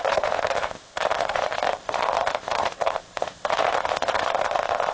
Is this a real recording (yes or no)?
no